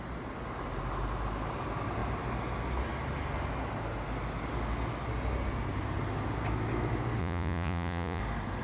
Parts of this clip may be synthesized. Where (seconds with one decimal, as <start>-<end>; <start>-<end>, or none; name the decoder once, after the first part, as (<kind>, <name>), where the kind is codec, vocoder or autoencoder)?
7.2-8.2 (vocoder, Vocos)